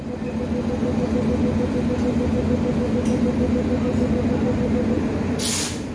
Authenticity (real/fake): real